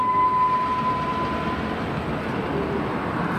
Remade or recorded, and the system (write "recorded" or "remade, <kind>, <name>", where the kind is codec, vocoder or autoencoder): recorded